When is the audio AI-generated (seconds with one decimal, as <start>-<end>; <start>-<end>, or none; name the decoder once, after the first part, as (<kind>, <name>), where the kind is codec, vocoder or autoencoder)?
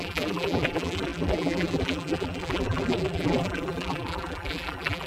0.0-5.1 (vocoder, BigVGAN v2)